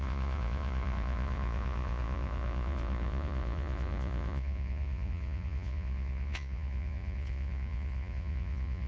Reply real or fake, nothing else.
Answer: fake